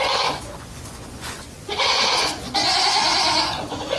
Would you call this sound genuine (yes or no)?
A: no